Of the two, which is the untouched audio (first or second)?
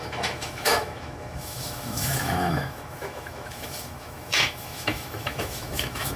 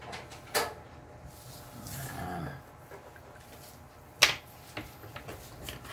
second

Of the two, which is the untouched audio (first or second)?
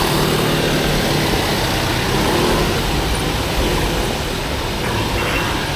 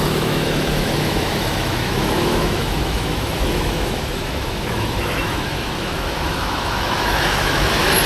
first